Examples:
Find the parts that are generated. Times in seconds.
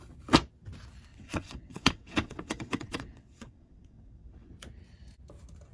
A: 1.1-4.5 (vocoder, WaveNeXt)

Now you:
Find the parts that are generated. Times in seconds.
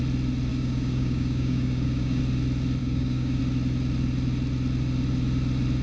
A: 0.5-2.2 (codec, DAC); 2.8-3.4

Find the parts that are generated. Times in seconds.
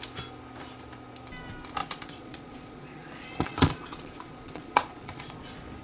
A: 1.8-5.3 (vocoder, Vocos)